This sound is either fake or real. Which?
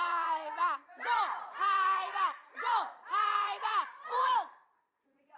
fake